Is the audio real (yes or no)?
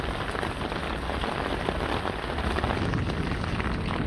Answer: yes